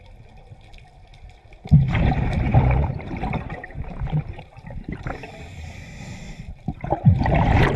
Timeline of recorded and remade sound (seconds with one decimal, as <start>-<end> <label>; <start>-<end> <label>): 0.0-1.1 recorded; 1.1-2.1 remade; 2.1-2.5 recorded; 2.5-7.2 remade; 7.2-7.8 recorded